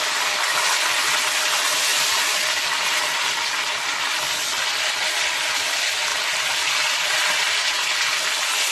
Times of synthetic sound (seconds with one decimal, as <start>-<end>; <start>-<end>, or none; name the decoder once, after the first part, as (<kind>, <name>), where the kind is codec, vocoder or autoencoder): none